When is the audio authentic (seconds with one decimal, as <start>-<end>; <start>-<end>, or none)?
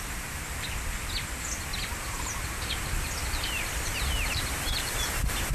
0.0-1.7; 5.0-5.5